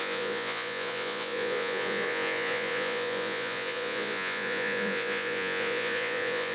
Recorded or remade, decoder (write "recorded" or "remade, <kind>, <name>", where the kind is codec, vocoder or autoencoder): remade, vocoder, Vocos